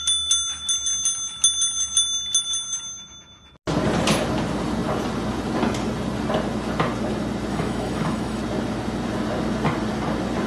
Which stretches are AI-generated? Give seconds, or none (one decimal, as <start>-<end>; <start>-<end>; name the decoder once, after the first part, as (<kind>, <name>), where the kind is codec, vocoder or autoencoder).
7.5-8.4 (autoencoder, DAC-VAE)